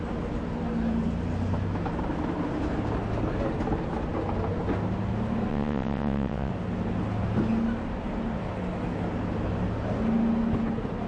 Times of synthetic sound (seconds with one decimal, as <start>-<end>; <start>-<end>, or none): 5.5-6.5